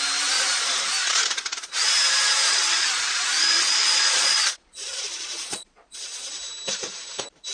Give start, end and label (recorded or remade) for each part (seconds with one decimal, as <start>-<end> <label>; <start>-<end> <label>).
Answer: 0.0-1.0 recorded; 1.0-1.9 remade; 1.9-2.5 recorded; 2.5-6.3 remade; 6.3-7.5 recorded